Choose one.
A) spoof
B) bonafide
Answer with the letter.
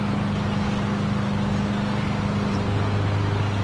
B